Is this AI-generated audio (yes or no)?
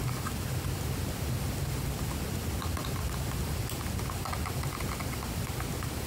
no